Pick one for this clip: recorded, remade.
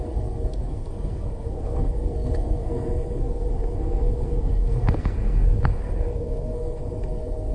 remade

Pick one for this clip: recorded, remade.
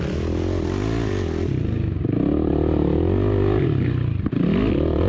recorded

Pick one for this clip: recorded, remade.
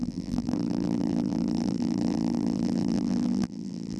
remade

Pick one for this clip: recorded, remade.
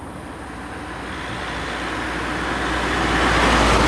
recorded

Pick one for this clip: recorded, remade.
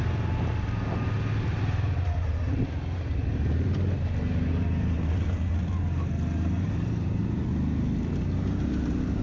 recorded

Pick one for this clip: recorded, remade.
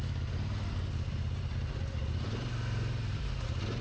remade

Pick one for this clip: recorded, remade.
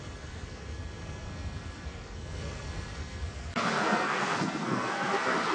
remade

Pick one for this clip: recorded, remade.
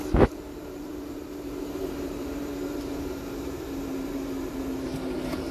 remade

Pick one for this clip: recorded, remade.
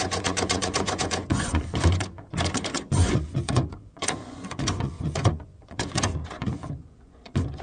remade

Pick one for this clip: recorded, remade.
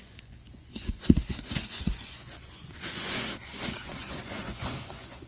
remade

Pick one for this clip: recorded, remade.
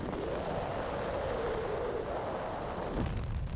recorded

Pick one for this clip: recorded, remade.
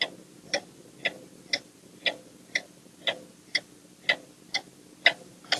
recorded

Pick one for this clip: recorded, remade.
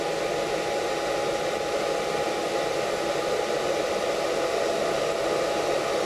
recorded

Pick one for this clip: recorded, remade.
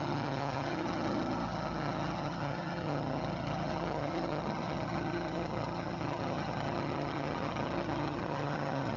remade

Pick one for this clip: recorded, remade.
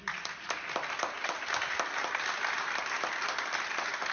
recorded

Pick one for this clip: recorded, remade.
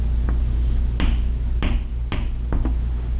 recorded